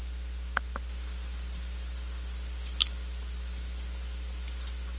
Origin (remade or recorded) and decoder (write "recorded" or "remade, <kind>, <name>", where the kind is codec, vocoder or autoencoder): recorded